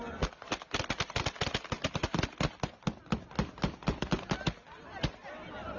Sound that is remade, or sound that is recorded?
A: recorded